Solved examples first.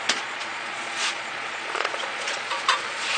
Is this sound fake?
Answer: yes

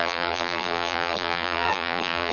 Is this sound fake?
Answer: yes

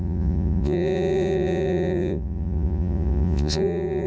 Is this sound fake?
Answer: yes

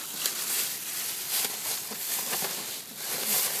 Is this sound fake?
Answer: no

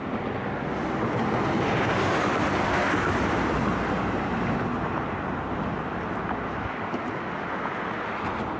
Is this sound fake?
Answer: no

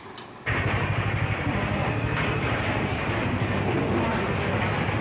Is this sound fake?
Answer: no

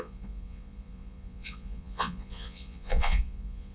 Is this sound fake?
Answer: yes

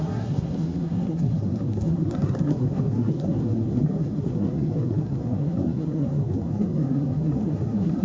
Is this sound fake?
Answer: yes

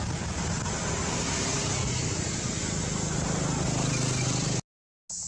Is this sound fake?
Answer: no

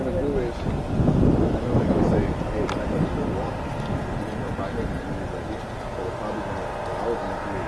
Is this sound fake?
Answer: no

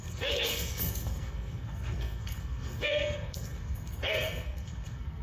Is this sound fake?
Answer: yes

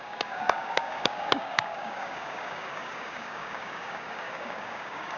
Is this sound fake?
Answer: yes